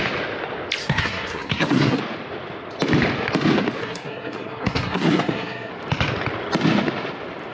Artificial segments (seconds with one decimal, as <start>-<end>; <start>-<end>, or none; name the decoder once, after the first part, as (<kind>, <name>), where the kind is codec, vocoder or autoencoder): 0.8-2.0 (codec, SNAC); 3.8-5.7